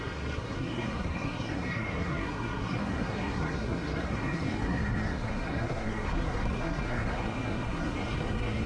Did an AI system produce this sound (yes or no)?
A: yes